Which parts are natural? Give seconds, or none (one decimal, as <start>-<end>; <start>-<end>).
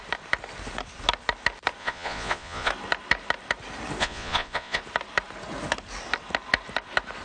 0.0-1.8; 2.7-4.0; 4.8-7.2